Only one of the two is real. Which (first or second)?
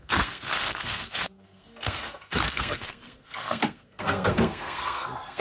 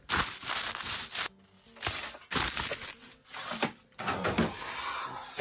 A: second